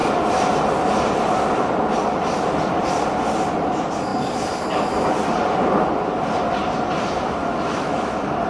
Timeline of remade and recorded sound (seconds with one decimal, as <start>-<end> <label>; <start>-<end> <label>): 0.0-7.4 recorded; 7.4-8.1 remade; 8.1-8.5 recorded